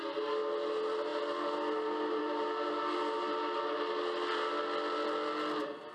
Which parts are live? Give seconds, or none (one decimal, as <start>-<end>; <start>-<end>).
0.0-5.9